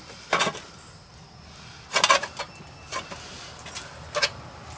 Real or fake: real